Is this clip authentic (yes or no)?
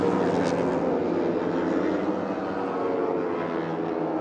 yes